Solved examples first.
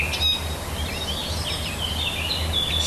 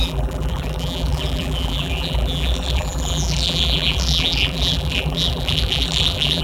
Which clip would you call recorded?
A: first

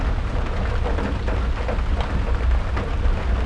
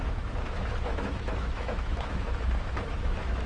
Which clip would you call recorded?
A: first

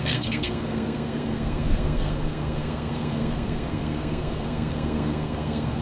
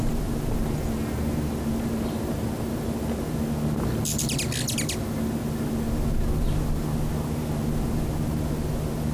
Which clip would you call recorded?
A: second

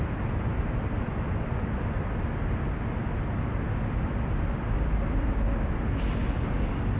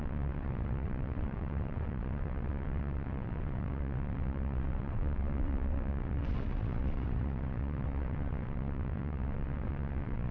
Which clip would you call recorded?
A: first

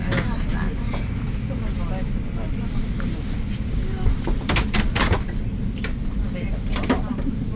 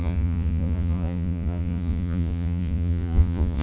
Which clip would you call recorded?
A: first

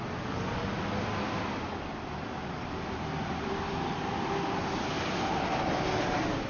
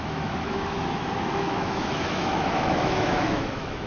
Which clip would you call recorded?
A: first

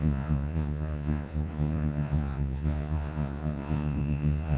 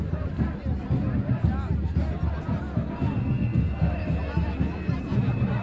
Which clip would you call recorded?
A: second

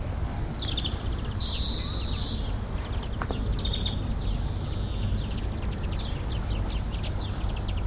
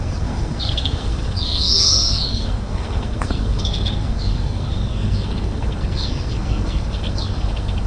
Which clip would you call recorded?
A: first